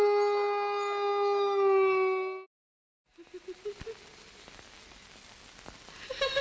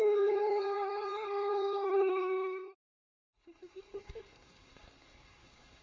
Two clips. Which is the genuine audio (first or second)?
first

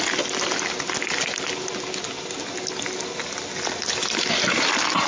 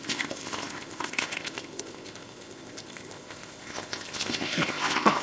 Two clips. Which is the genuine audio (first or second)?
first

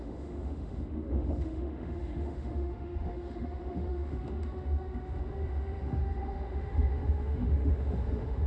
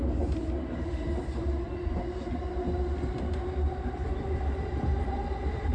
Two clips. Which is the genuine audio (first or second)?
second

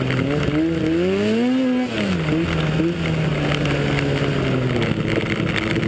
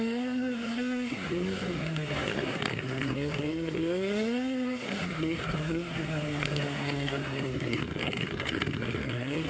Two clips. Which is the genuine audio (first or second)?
first